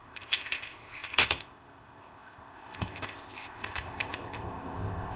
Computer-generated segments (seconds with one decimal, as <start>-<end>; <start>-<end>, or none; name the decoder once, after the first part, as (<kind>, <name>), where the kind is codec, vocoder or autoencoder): 0.0-5.2 (codec, ZipCodec)